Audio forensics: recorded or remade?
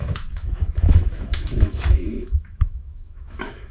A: remade